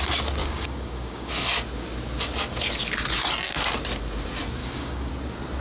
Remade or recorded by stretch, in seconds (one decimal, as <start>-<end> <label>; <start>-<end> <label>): 0.0-0.4 recorded; 0.4-1.3 remade; 1.3-4.6 recorded; 4.6-5.1 remade; 5.1-5.6 recorded